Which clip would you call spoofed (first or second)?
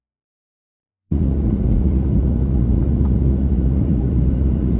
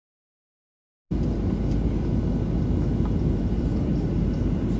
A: first